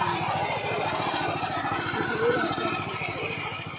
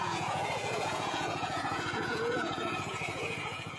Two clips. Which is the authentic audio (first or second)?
first